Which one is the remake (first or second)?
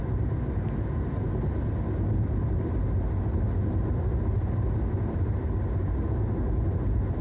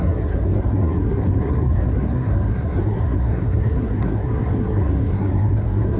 second